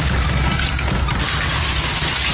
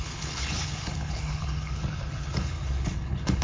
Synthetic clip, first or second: second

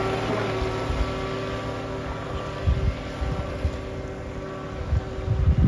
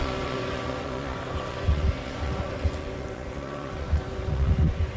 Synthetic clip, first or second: second